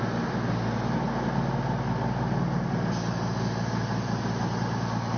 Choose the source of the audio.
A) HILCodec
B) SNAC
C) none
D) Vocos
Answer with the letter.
C